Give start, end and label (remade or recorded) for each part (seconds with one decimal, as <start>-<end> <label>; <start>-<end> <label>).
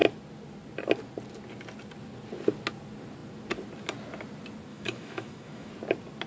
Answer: 0.0-4.7 recorded; 4.7-5.7 remade; 5.7-6.3 recorded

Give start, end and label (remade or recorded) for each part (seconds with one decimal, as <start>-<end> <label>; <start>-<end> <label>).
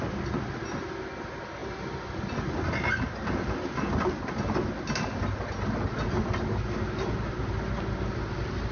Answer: 0.0-8.7 recorded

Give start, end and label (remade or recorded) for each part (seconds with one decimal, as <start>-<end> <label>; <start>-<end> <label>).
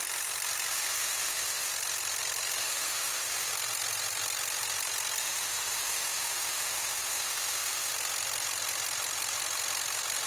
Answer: 0.0-0.7 recorded; 0.7-1.7 remade; 1.7-2.6 recorded; 2.6-3.5 remade; 3.5-5.2 recorded; 5.2-7.9 remade; 7.9-10.3 recorded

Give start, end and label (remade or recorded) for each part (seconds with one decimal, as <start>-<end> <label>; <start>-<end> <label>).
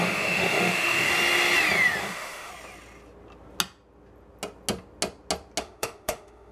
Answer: 0.0-1.1 remade; 1.1-2.0 recorded; 2.0-2.5 remade; 2.5-5.6 recorded; 5.6-6.5 remade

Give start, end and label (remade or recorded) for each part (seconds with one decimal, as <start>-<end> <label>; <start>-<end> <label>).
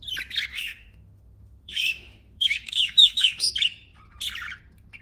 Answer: 0.0-0.5 recorded; 0.5-3.5 remade; 3.5-5.0 recorded